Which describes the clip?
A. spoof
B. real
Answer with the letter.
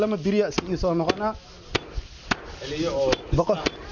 B